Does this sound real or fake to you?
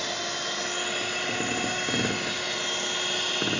real